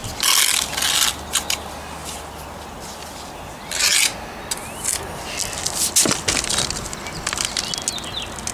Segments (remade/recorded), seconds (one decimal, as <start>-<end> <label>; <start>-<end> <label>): 0.0-8.5 recorded